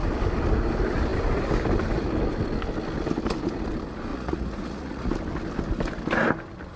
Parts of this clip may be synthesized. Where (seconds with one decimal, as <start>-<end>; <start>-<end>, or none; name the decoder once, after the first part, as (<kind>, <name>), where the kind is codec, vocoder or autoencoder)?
4.1-5.1 (vocoder, Vocos)